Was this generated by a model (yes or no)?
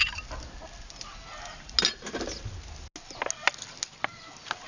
no